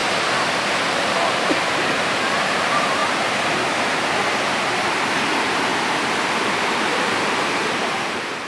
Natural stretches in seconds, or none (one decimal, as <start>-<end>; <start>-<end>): 0.0-0.9; 3.0-5.1; 5.7-6.8